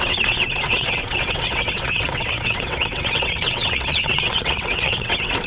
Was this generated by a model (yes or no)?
yes